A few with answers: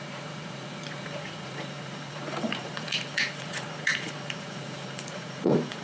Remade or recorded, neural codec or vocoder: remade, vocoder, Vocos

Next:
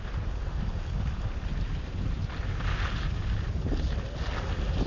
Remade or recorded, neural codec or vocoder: recorded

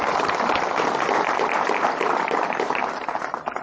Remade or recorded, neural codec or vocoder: remade, vocoder, BigVGAN v2